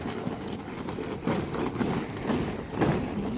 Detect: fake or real real